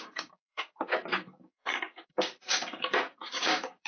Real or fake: fake